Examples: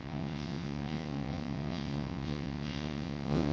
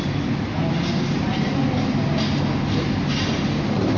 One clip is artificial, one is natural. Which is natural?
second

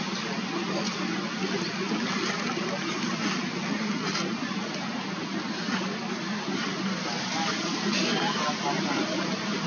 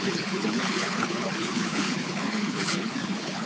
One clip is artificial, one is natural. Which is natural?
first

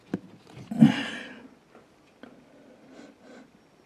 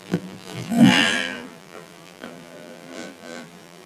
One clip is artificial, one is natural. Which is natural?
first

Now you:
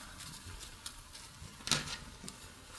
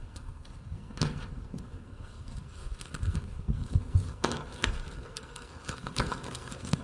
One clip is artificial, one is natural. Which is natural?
first